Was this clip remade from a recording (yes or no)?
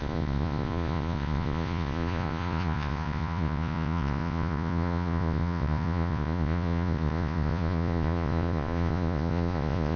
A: yes